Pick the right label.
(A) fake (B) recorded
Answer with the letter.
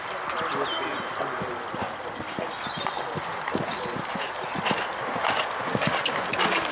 B